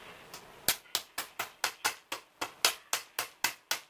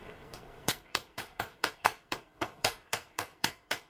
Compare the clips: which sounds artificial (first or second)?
second